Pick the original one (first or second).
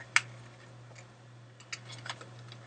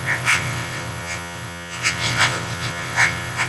first